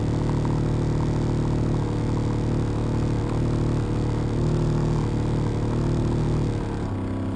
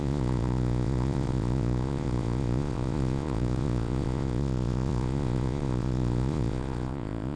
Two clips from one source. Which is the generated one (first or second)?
second